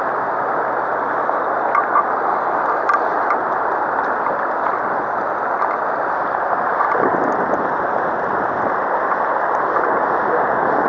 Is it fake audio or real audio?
real